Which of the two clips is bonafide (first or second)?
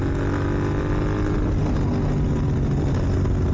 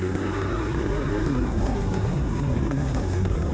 first